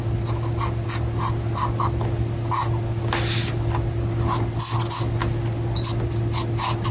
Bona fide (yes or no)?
yes